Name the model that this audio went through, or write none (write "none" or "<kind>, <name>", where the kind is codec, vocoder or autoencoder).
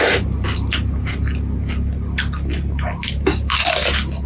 none